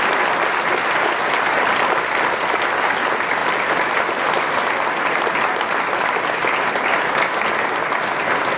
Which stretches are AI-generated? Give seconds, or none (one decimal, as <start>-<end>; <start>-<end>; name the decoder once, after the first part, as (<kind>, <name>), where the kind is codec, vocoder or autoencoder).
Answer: none